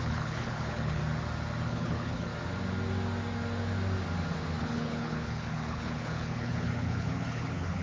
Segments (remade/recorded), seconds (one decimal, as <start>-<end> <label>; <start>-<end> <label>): 0.0-1.0 remade; 1.0-1.6 recorded; 1.6-2.3 remade; 2.3-4.6 recorded; 4.6-7.8 remade